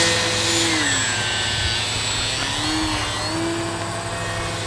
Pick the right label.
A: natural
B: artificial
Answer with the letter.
A